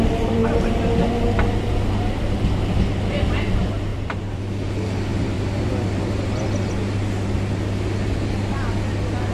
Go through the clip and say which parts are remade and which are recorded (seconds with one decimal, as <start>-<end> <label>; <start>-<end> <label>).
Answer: 0.0-3.9 recorded; 3.9-4.4 remade; 4.4-5.1 recorded; 5.1-6.7 remade; 6.7-9.3 recorded